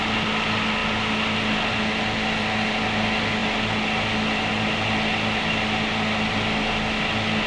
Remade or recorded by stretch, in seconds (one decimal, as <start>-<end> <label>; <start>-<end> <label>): 0.0-7.5 recorded

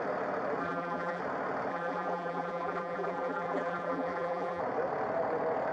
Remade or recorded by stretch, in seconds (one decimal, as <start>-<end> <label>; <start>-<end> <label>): 0.0-0.6 recorded; 0.6-1.2 remade; 1.2-1.7 recorded; 1.7-4.6 remade; 4.6-5.7 recorded

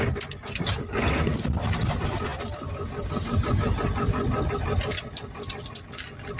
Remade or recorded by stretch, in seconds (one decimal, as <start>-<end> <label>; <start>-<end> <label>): 0.0-6.4 recorded

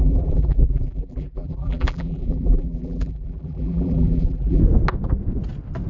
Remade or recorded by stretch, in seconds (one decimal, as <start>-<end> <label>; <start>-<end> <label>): 0.0-4.6 remade; 4.6-5.9 recorded

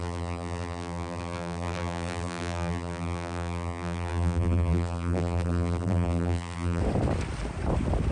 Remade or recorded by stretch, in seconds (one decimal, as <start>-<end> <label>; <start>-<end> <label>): 0.0-6.8 remade; 6.8-8.1 recorded

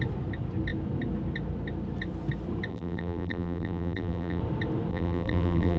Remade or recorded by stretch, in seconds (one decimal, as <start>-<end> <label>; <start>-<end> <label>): 0.0-2.7 recorded; 2.7-4.4 remade; 4.4-4.9 recorded; 4.9-5.8 remade

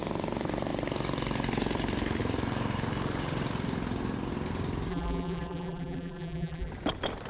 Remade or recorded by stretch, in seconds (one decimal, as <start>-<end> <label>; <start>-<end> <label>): 0.0-4.9 recorded; 4.9-6.7 remade; 6.7-7.3 recorded